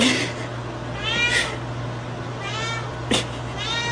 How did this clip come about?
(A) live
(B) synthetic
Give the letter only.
A